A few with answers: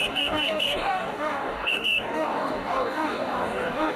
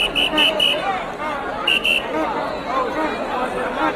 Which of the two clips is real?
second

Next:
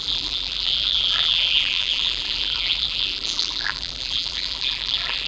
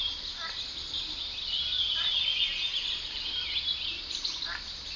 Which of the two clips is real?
second